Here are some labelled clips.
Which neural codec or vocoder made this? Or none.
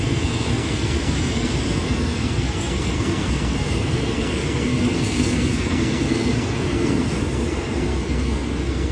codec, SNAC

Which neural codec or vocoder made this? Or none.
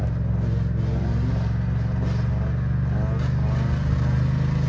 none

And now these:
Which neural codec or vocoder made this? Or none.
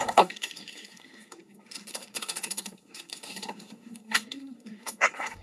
codec, SNAC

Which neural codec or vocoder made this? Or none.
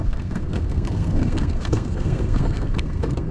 codec, SNAC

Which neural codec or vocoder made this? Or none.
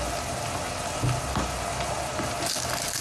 none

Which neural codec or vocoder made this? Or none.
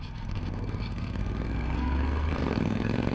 codec, SNAC